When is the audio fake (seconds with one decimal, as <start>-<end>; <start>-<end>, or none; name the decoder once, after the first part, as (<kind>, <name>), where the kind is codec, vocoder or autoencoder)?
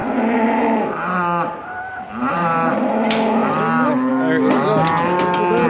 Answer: 2.3-2.9 (vocoder, BigVGAN v2)